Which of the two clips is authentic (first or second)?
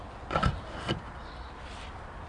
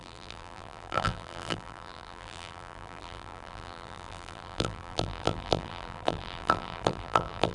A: first